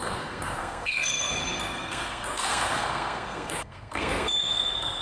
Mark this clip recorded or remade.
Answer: remade